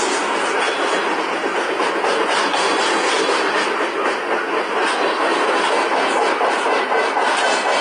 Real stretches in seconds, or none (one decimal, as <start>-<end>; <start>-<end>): 0.0-7.8